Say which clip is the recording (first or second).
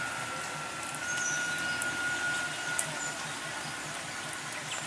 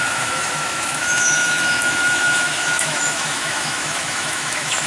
first